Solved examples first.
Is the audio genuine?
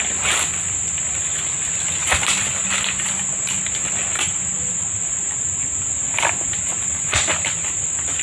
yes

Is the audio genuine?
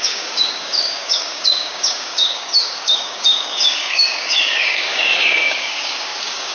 no